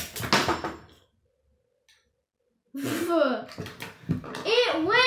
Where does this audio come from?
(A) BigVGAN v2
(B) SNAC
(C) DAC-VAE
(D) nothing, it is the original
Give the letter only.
D